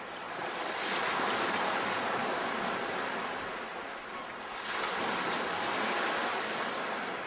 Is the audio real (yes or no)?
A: yes